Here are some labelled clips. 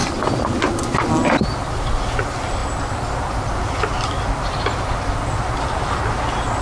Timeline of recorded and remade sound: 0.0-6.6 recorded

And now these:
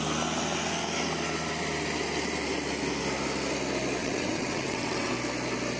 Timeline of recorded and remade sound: 0.0-4.0 recorded; 4.0-5.1 remade; 5.1-5.8 recorded

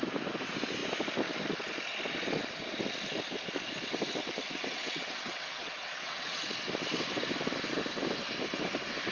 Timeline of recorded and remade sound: 0.0-4.7 recorded; 4.7-6.5 remade; 6.5-9.1 recorded

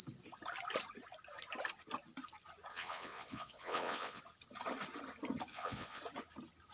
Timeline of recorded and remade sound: 0.0-2.7 recorded; 2.7-4.2 remade; 4.2-5.5 recorded; 5.5-6.0 remade; 6.0-6.7 recorded

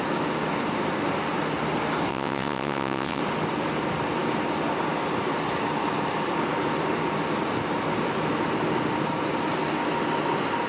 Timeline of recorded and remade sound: 0.0-2.1 recorded; 2.1-3.2 remade; 3.2-10.7 recorded

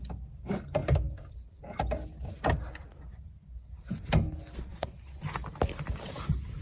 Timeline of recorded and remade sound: 0.0-4.7 recorded; 4.7-5.2 remade; 5.2-6.6 recorded

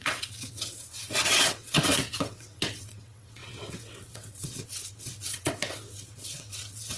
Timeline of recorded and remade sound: 0.0-7.0 remade

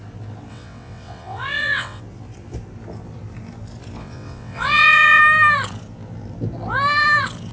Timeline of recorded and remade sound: 0.0-0.5 recorded; 0.5-2.0 remade; 2.0-4.0 recorded; 4.0-5.2 remade; 5.2-7.5 recorded